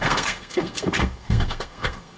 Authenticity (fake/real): fake